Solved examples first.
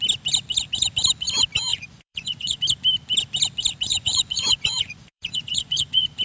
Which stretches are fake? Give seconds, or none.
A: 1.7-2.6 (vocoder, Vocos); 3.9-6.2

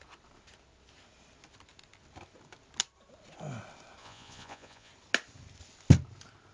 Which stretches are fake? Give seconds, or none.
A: 4.0-4.9 (vocoder, Vocos)

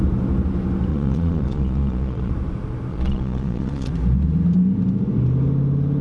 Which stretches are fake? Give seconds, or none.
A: 0.9-2.3 (vocoder, Vocos); 2.9-3.9

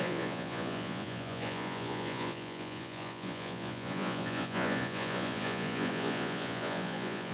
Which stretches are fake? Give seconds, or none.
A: 0.0-7.3 (vocoder, Vocos)

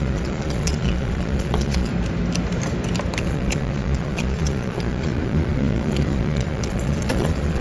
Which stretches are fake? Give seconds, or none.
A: 0.0-1.9 (vocoder, Vocos); 3.2-7.6

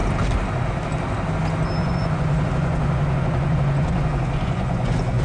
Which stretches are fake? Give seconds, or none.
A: 1.8-5.2 (vocoder, Vocos)

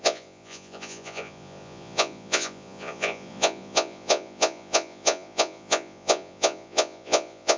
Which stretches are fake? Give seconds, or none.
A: 0.0-7.6 (vocoder, Vocos)